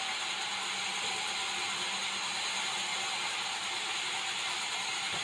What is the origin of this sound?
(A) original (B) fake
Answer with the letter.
A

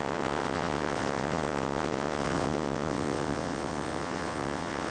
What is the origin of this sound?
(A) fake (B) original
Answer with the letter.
A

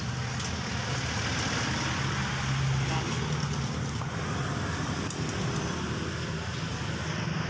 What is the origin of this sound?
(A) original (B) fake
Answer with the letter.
A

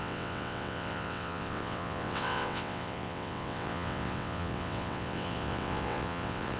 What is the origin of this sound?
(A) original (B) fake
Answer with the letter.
B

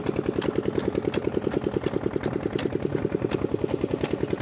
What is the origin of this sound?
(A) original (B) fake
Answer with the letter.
A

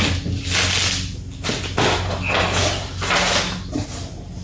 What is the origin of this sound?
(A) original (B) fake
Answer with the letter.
A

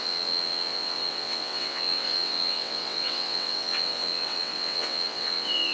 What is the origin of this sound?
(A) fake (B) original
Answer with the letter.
A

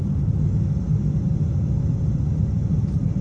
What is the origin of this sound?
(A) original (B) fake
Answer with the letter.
A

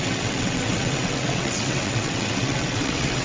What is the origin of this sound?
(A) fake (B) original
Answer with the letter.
A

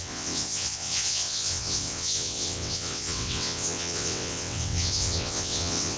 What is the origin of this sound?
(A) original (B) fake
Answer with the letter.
B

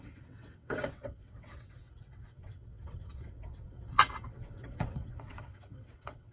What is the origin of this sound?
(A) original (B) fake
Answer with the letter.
B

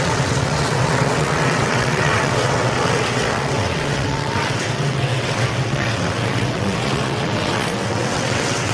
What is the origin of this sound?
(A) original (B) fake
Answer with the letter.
B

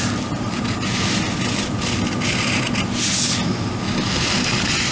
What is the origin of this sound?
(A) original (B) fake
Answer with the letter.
A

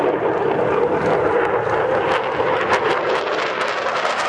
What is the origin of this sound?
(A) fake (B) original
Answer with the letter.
B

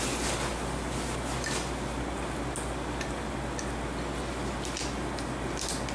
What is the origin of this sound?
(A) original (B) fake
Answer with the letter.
A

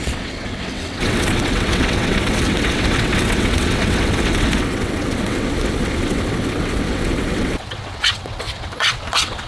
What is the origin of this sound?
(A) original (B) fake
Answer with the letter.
B